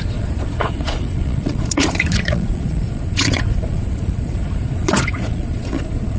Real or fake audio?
fake